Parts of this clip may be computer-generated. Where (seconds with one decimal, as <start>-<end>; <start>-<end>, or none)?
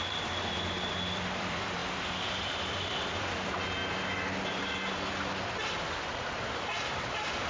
0.0-3.8; 6.6-7.5